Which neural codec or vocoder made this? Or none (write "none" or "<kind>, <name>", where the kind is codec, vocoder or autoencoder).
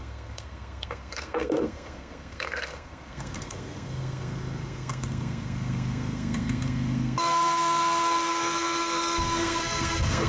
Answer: codec, SNAC